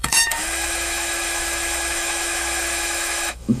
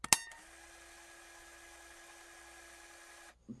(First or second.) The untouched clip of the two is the second